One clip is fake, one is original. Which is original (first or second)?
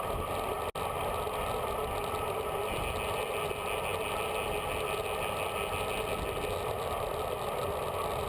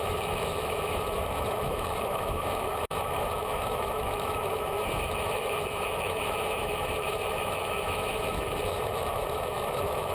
first